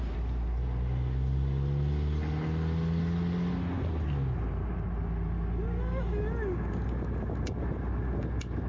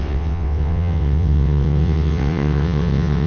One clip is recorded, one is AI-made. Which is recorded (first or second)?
first